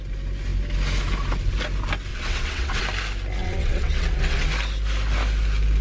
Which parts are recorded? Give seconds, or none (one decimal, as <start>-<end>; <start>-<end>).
0.0-2.1; 2.8-3.4; 4.5-5.8